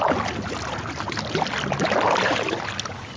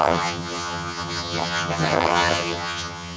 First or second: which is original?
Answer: first